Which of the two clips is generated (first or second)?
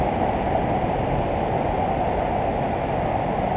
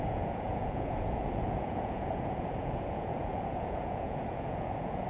second